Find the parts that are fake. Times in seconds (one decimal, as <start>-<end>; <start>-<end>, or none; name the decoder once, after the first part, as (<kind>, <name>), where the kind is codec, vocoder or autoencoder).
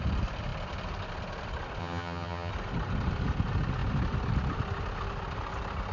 1.8-2.5 (vocoder, HiFi-GAN)